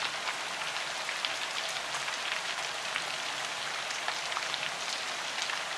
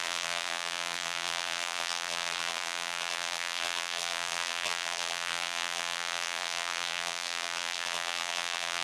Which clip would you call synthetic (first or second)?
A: second